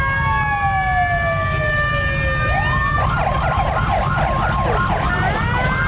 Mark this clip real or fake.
real